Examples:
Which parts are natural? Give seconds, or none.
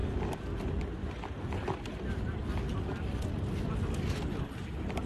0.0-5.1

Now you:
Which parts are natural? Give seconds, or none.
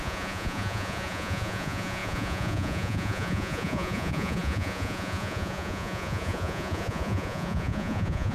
none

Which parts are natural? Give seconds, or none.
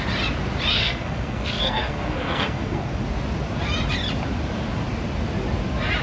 0.0-0.7; 2.9-6.0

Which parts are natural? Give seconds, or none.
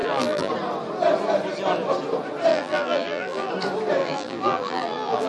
0.5-2.5; 3.5-4.0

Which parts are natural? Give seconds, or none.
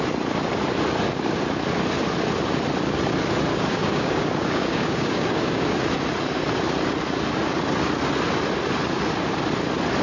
0.0-3.5; 5.8-10.0